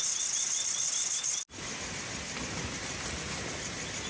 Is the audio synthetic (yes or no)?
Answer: no